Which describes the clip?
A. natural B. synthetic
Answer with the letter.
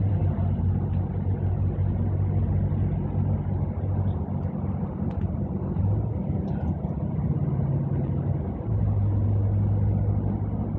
A